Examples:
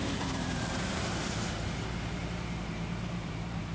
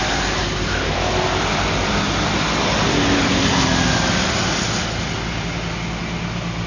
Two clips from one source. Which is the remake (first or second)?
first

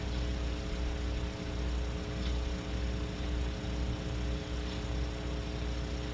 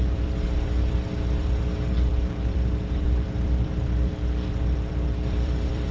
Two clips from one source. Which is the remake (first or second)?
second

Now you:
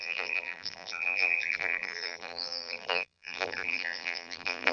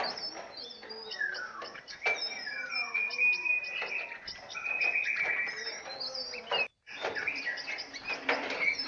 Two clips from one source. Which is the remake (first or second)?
first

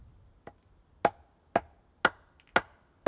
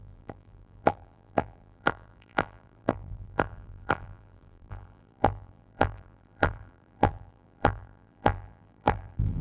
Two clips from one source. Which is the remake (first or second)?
second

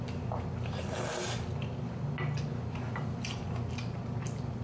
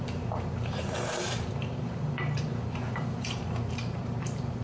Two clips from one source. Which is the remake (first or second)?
second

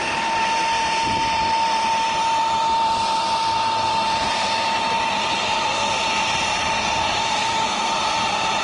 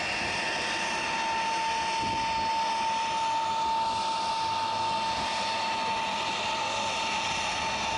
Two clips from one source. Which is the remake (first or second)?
first